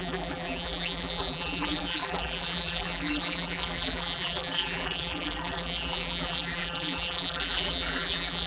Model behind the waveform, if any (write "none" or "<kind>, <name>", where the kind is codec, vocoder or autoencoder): vocoder, BigVGAN v2